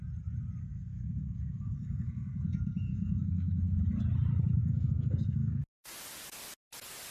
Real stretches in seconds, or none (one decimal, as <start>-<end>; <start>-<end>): 0.0-0.6; 3.8-4.6; 5.9-7.1